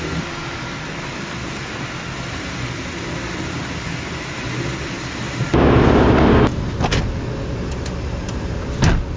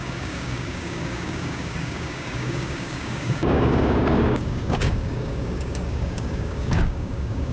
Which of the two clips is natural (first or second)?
first